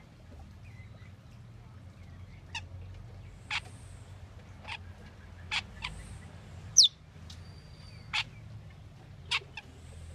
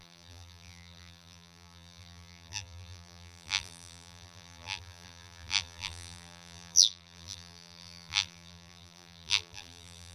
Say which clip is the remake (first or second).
second